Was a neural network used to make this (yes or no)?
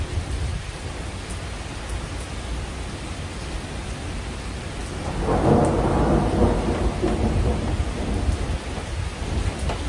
no